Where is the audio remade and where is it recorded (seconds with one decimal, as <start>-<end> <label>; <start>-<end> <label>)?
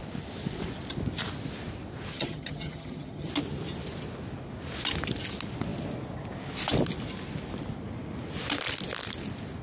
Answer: 0.0-2.1 recorded; 2.1-3.3 remade; 3.3-9.6 recorded